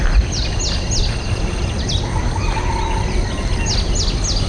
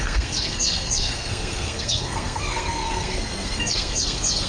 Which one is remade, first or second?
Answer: second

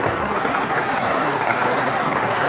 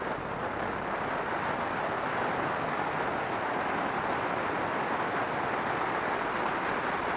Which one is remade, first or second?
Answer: first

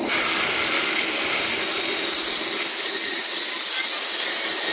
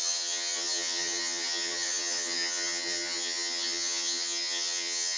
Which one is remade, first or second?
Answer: second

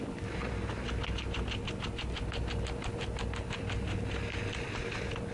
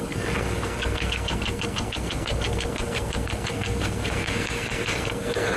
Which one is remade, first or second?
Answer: second